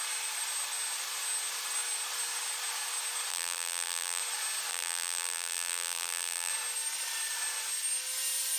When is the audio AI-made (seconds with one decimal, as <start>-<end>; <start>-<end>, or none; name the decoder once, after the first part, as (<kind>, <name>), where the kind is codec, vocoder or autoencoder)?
3.3-4.2 (vocoder, BigVGAN v2); 4.7-6.5